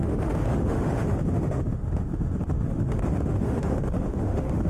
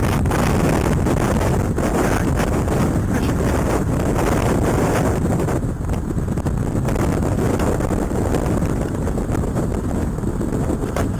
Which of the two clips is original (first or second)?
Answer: second